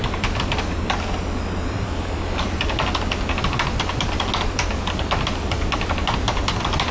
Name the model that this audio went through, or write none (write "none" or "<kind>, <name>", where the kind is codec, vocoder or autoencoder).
none